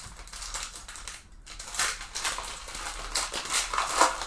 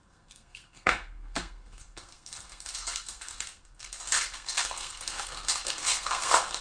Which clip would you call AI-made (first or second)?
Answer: second